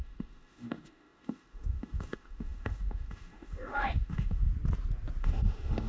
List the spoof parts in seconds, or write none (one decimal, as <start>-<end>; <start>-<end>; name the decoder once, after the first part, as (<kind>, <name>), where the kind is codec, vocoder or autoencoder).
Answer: 0.0-4.5 (autoencoder, DAC-VAE); 5.2-5.9